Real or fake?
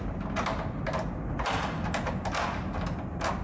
real